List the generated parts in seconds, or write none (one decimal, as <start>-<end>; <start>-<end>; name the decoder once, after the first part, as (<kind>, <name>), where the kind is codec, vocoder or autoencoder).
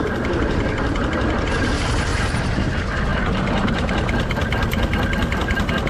2.1-2.7 (vocoder, BigVGAN v2); 3.1-3.9